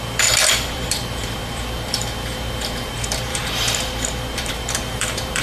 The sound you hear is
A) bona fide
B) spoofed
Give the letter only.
B